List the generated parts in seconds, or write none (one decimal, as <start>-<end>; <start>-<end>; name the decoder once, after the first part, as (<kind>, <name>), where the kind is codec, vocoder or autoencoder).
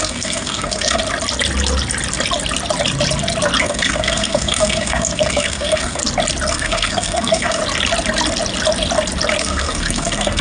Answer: 0.0-1.0 (codec, SNAC); 3.6-6.0; 6.5-7.6; 9.4-10.4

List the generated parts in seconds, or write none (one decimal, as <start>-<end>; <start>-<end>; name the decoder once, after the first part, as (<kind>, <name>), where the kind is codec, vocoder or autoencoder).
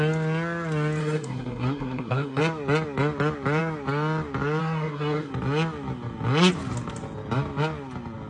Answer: 1.0-2.4 (codec, SNAC); 4.6-5.3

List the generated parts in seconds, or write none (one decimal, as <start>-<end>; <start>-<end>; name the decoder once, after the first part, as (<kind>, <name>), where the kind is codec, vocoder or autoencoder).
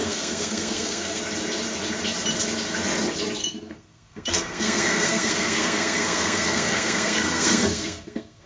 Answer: 0.0-1.2 (codec, SNAC); 3.4-8.5